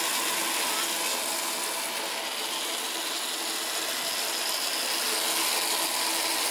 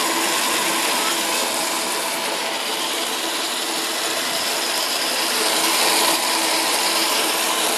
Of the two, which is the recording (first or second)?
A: first